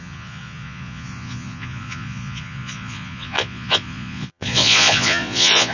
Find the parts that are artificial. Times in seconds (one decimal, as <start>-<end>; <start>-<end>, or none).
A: 0.0-5.7